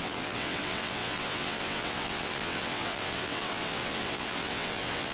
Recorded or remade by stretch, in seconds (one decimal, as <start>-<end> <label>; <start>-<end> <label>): 0.0-5.1 remade